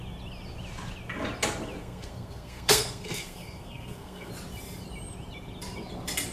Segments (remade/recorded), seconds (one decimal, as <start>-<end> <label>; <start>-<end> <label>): 0.0-1.8 recorded; 1.8-4.3 remade; 4.3-6.3 recorded